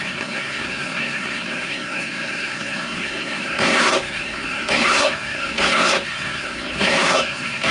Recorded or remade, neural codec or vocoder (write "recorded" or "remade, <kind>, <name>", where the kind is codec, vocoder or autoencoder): remade, codec, SNAC